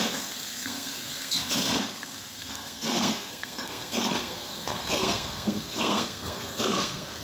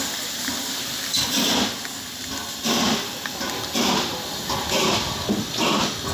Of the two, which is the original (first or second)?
second